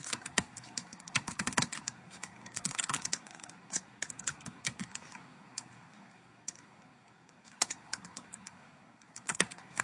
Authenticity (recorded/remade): remade